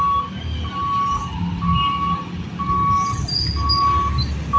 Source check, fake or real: real